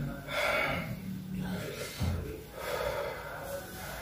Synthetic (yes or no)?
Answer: no